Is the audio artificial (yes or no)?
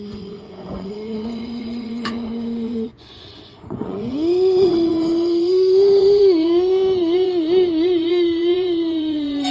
yes